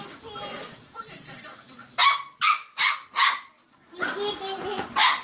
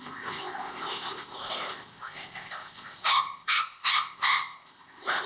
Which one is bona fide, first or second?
first